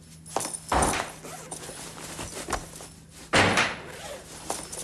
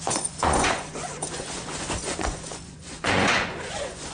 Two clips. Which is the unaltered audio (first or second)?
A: first